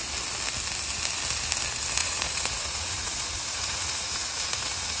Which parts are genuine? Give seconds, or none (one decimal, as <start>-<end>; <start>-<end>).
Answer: 0.0-2.0